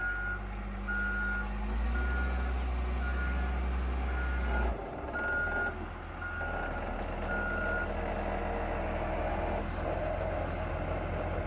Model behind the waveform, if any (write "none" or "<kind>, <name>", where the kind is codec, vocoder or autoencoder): none